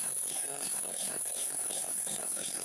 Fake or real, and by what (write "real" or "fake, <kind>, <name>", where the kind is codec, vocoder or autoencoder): fake, codec, SNAC